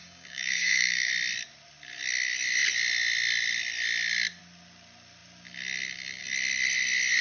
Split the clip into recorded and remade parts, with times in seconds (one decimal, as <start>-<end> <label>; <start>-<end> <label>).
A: 0.0-1.1 remade; 1.1-7.2 recorded

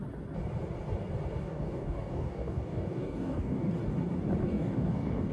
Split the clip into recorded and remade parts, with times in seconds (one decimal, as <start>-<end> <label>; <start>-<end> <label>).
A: 0.0-1.4 recorded; 1.4-3.7 remade; 3.7-4.4 recorded; 4.4-5.3 remade

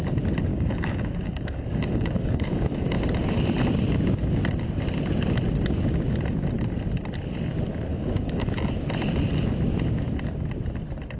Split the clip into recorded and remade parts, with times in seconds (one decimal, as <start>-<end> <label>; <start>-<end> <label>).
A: 0.0-0.5 recorded; 0.5-3.0 remade; 3.0-7.9 recorded; 7.9-8.5 remade; 8.5-11.2 recorded

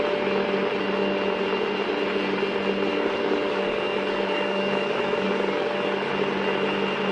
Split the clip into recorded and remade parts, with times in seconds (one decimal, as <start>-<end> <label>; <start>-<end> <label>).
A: 0.0-2.9 recorded; 2.9-6.1 remade; 6.1-7.1 recorded

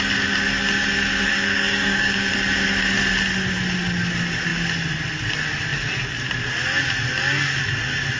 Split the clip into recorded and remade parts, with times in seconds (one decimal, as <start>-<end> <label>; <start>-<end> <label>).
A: 0.0-1.3 recorded; 1.3-2.3 remade; 2.3-8.2 recorded

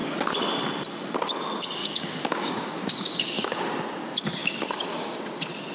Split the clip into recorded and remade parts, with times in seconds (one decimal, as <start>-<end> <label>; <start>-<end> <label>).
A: 0.0-1.8 recorded; 1.8-3.6 remade; 3.6-4.4 recorded; 4.4-5.2 remade; 5.2-5.7 recorded